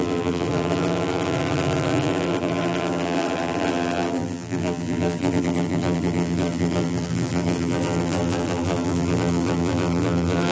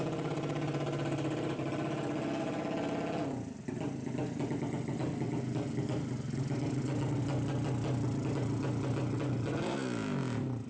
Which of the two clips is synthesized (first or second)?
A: first